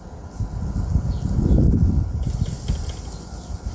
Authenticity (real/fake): real